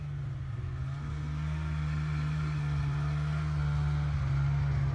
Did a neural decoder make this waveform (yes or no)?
no